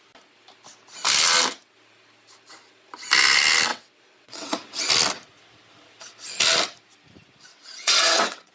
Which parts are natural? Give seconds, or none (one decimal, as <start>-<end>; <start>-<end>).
0.0-3.7; 4.9-7.5